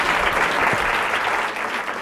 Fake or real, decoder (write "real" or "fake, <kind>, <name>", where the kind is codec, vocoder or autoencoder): real